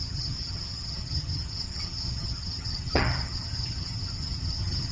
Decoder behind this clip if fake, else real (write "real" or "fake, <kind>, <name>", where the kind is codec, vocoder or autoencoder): fake, vocoder, HiFi-GAN